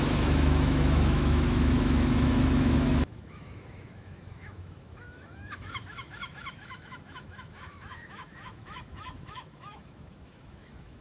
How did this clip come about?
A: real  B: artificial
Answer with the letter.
B